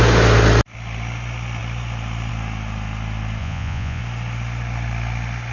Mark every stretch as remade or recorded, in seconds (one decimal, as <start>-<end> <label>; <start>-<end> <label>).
0.0-3.4 recorded; 3.4-4.0 remade; 4.0-5.5 recorded